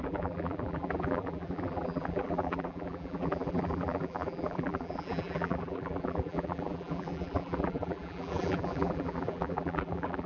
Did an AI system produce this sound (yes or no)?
yes